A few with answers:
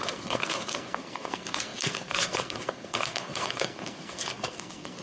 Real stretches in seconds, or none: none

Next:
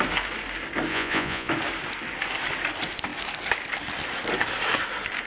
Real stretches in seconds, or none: 0.0-0.9; 1.5-5.3

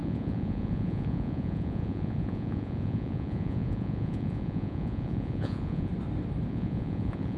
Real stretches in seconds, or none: 5.9-6.5

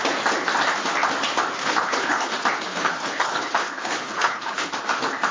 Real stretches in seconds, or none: 0.0-1.6; 2.3-2.7; 4.7-5.3

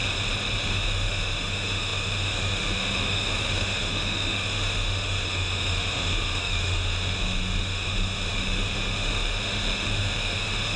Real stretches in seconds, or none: 0.0-0.6

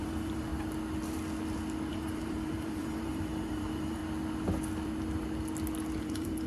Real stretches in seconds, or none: 0.5-1.9; 4.0-6.0

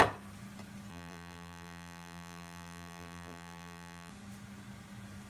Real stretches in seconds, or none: 0.0-0.9; 4.1-5.3